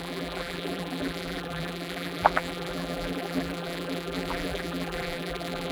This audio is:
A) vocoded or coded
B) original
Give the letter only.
A